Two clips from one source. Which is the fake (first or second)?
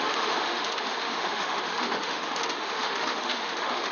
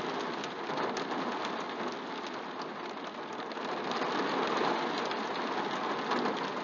first